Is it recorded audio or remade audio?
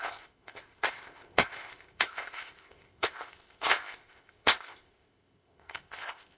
remade